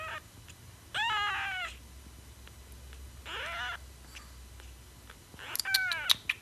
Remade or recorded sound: recorded